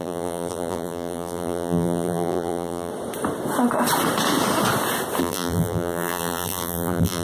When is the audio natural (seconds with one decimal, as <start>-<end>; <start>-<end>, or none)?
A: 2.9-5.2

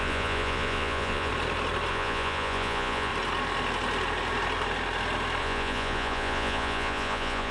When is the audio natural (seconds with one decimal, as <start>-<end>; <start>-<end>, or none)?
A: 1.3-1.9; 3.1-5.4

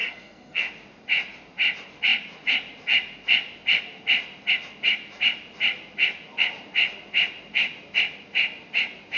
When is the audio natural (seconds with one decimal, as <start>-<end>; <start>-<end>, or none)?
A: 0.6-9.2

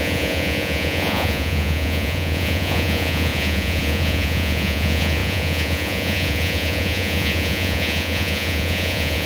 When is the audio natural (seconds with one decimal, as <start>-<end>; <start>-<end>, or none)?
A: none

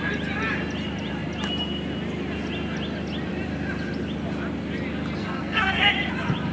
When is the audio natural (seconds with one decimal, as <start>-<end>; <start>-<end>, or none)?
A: 0.0-5.2; 5.9-6.5

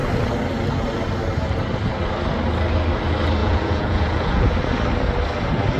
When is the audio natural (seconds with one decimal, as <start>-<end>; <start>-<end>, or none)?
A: 0.0-3.4; 4.4-5.8